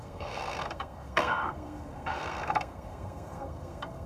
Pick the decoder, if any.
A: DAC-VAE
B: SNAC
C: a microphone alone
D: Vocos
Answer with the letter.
B